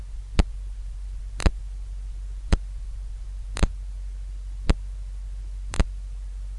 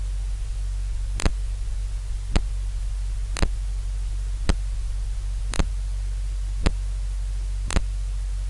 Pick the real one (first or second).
second